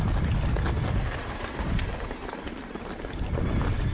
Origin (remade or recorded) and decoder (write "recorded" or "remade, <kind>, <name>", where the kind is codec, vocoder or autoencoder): recorded